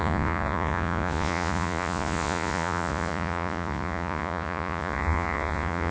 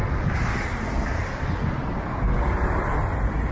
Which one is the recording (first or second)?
second